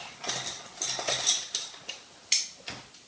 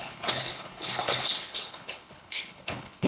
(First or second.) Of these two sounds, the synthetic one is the second